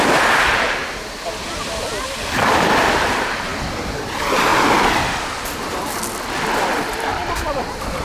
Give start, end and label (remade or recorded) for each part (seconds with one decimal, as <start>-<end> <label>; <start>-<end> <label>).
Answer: 0.0-7.1 recorded; 7.1-8.0 remade